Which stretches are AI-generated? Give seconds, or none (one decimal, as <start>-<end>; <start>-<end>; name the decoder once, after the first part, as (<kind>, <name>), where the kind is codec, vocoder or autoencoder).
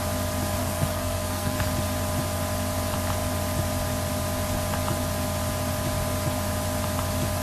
0.6-1.7 (codec, SNAC)